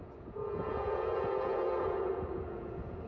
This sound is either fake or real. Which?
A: fake